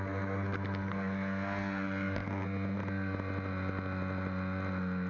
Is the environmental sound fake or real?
real